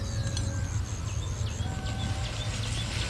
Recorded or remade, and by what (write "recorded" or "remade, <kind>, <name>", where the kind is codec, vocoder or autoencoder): recorded